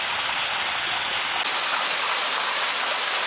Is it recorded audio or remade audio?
recorded